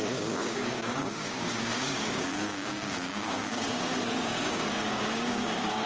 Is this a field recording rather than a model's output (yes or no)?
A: no